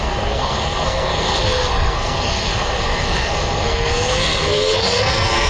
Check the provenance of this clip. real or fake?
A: fake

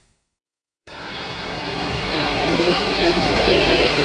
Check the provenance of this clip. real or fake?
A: fake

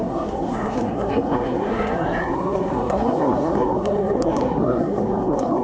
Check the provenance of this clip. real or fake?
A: fake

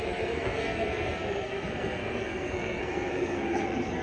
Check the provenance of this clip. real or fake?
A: fake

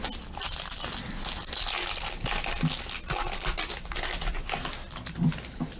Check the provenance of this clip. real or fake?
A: real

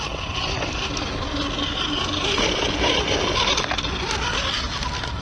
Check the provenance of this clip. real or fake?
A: real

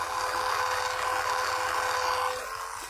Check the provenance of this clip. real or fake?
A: real